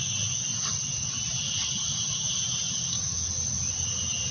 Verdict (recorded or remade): recorded